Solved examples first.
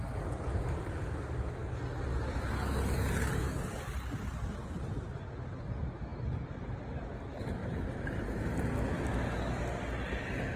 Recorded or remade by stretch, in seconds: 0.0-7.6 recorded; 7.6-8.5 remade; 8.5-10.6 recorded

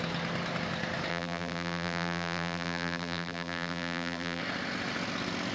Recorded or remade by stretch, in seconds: 0.0-1.1 recorded; 1.1-4.4 remade; 4.4-5.5 recorded

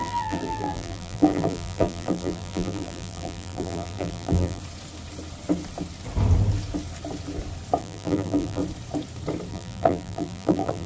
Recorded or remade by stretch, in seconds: 0.0-4.6 remade; 4.6-7.8 recorded; 7.8-8.6 remade; 8.6-9.5 recorded; 9.5-10.9 remade